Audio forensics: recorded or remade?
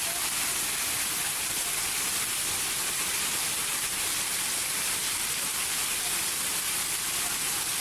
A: recorded